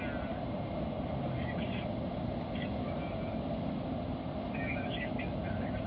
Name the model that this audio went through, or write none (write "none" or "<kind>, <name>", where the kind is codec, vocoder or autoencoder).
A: none